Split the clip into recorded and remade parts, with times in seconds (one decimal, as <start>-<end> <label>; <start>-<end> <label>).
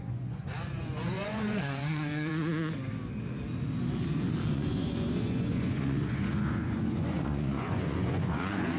0.0-2.3 remade; 2.3-4.5 recorded; 4.5-8.8 remade